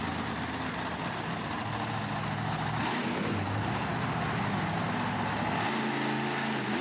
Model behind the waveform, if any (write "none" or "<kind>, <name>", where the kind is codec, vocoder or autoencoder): none